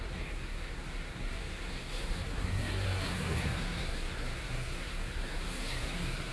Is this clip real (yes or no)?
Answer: no